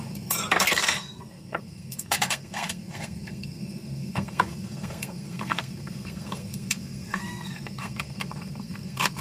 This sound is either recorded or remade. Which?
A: remade